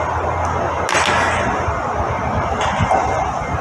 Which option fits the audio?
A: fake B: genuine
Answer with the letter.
B